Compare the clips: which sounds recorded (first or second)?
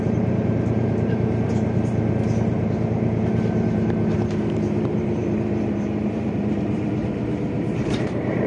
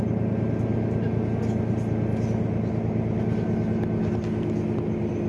second